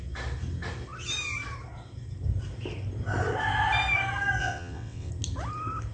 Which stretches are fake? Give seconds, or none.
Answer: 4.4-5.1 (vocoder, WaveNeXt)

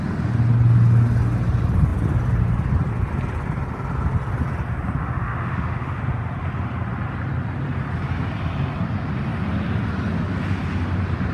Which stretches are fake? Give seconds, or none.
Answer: 5.0-6.0 (autoencoder, DAC-VAE)

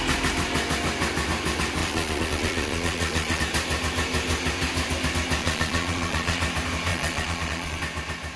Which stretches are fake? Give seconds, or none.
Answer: 1.8-3.4 (vocoder, Vocos); 5.4-6.4; 6.9-7.8

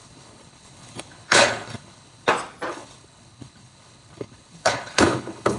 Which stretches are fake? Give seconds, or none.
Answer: 0.0-2.3 (codec, HILCodec); 2.7-5.6